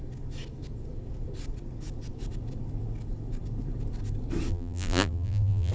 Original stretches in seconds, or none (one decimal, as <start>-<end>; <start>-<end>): 0.0-4.5